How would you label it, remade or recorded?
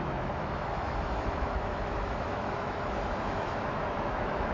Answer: remade